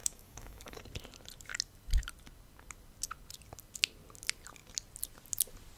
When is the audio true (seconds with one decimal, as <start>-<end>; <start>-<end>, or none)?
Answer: 0.8-5.8